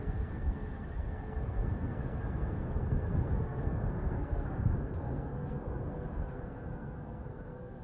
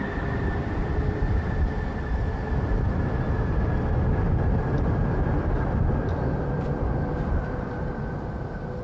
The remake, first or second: first